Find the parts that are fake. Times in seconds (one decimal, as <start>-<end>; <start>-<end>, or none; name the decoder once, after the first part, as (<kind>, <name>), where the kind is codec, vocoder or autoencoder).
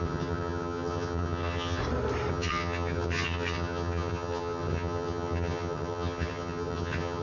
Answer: 0.0-1.8 (vocoder, HiFi-GAN); 2.3-7.2